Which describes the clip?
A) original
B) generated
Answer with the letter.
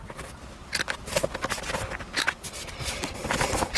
A